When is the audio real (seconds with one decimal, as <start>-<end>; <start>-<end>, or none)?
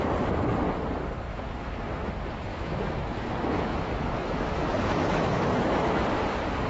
0.0-1.3; 2.1-2.5; 6.0-6.7